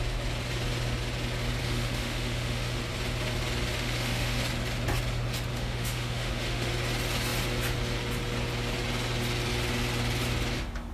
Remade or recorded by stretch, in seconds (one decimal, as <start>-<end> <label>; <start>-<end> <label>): 0.0-1.6 recorded; 1.6-2.8 remade; 2.8-3.7 recorded; 3.7-4.4 remade; 4.4-5.5 recorded; 5.5-6.7 remade; 6.7-10.9 recorded